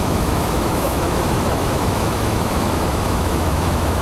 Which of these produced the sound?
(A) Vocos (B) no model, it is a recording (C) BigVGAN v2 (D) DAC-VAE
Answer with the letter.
D